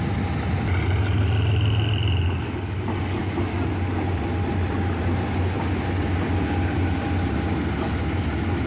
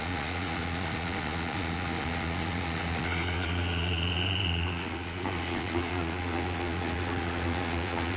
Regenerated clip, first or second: second